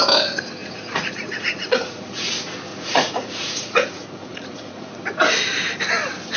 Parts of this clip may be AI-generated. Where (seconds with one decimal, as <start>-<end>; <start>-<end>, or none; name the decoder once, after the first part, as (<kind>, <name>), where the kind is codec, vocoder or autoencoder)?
0.6-2.3 (vocoder, Vocos); 2.7-5.0